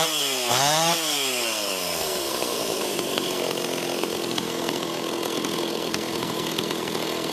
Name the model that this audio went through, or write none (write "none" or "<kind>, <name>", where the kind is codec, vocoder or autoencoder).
codec, SNAC